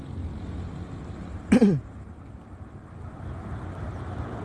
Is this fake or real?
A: real